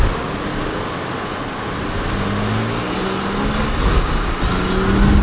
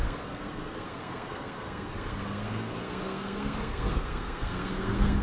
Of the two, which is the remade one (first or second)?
second